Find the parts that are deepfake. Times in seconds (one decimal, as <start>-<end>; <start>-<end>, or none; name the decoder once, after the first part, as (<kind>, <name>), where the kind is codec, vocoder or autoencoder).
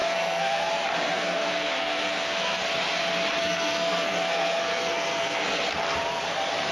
0.0-0.7 (codec, SNAC); 1.1-2.6; 3.4-5.6